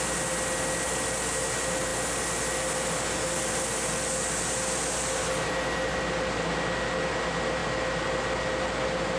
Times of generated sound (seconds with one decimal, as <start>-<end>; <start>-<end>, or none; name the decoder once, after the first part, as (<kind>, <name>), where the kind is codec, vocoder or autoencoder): none